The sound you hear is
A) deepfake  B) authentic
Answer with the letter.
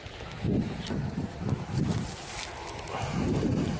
B